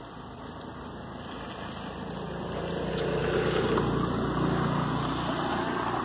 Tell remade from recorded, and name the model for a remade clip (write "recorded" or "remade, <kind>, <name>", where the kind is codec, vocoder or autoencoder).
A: recorded